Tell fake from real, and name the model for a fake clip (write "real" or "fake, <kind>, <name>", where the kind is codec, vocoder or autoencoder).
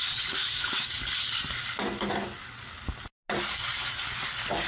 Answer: real